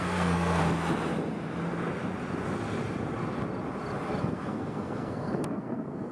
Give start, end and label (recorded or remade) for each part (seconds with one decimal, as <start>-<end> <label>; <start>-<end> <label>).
0.0-0.6 remade; 0.6-4.2 recorded; 4.2-6.1 remade